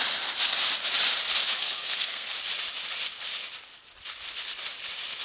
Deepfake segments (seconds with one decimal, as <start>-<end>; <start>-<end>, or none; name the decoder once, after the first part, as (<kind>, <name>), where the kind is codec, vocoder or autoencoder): 1.6-2.3 (codec, SNAC)